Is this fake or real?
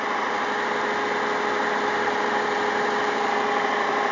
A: real